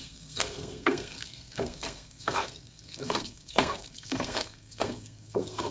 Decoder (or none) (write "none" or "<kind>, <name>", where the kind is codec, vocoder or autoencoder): codec, SNAC